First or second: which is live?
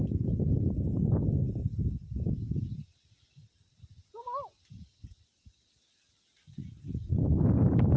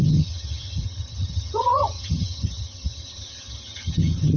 first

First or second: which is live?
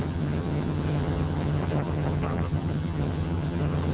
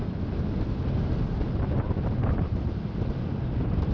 second